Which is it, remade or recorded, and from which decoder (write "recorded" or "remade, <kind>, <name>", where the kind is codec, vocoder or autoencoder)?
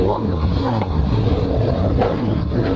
remade, codec, SNAC